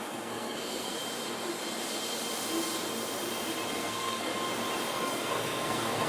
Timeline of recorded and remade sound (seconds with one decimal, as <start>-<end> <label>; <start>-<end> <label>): 0.0-1.0 remade; 1.0-3.7 recorded; 3.7-4.3 remade; 4.3-4.9 recorded; 4.9-6.1 remade